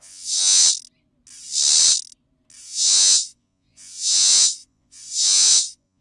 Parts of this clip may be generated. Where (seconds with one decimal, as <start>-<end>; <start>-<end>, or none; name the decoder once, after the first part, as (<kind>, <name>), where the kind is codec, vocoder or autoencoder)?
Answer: 0.0-0.6 (vocoder, Vocos); 2.6-6.0